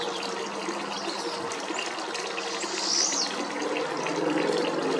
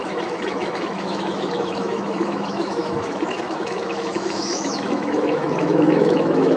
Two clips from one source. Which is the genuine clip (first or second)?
first